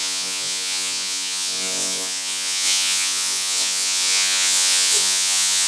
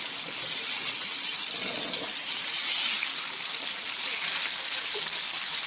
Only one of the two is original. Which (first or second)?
second